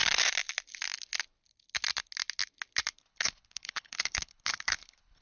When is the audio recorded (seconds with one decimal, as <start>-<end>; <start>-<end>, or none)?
0.0-3.0